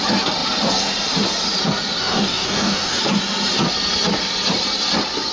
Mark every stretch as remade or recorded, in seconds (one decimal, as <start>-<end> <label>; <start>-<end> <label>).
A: 0.0-2.0 recorded; 2.0-3.0 remade; 3.0-5.3 recorded